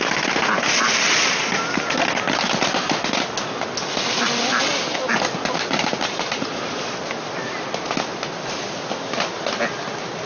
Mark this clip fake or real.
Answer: real